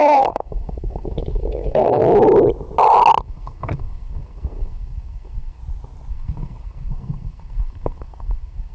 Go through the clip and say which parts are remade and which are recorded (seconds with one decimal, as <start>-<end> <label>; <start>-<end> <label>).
0.0-2.0 remade; 2.0-3.2 recorded; 3.2-5.6 remade; 5.6-6.1 recorded; 6.1-8.7 remade